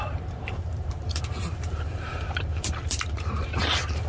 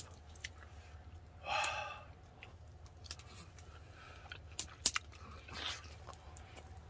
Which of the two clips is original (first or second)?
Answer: second